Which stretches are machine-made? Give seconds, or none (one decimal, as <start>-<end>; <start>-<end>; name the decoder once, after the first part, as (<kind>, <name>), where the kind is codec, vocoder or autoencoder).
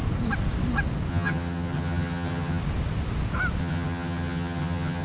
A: 1.1-2.6 (vocoder, HiFi-GAN); 3.6-5.0